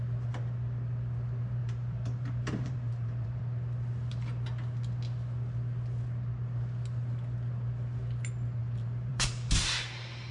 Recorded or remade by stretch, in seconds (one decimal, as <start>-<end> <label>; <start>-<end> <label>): 0.0-1.6 recorded; 1.6-3.4 remade; 3.4-8.6 recorded; 8.6-9.3 remade; 9.3-10.3 recorded